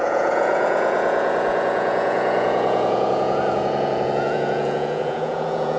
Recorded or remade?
remade